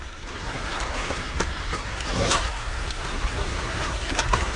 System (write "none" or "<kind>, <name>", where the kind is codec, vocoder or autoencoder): codec, SNAC